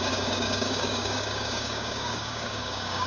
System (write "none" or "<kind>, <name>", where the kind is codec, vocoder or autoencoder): codec, DAC